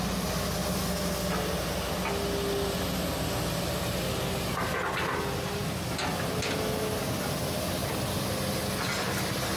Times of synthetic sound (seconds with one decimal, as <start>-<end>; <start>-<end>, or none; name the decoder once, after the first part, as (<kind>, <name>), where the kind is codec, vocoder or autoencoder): 7.8-8.5 (vocoder, BigVGAN v2)

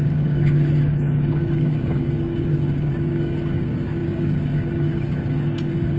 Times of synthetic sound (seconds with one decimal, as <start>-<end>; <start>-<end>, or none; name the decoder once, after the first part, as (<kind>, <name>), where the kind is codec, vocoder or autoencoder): 0.0-6.0 (codec, DAC)

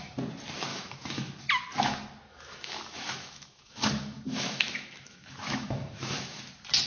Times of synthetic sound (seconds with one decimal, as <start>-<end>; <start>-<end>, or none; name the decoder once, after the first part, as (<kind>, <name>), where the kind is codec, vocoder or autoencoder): 0.7-1.4 (autoencoder, DAC-VAE); 2.3-6.4

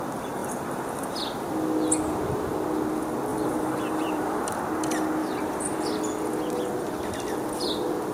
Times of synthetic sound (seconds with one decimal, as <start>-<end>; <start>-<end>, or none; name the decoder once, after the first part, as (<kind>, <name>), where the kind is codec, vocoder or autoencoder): 3.3-4.4 (vocoder, BigVGAN v2); 5.2-5.8

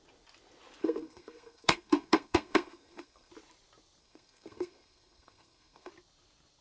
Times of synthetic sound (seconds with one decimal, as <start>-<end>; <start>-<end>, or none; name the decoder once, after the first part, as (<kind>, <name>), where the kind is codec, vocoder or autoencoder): 0.8-3.3 (codec, SNAC); 4.0-5.9

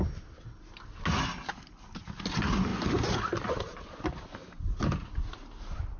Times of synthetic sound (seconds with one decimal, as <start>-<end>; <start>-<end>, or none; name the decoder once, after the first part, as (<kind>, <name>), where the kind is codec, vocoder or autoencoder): none

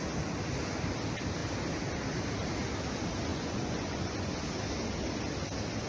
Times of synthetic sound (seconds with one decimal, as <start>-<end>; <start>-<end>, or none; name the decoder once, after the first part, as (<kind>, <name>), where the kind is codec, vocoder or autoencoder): 3.3-4.3 (vocoder, Vocos)

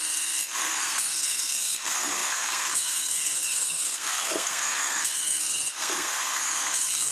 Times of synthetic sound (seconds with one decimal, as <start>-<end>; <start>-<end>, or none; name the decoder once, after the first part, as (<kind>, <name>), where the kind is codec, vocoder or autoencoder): 0.0-7.1 (codec, SNAC)